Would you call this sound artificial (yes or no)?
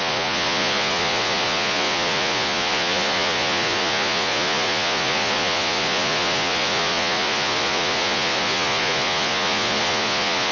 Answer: yes